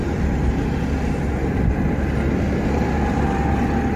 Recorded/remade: recorded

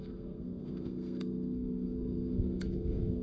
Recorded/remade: remade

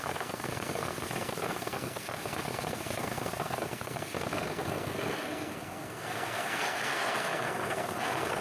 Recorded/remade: remade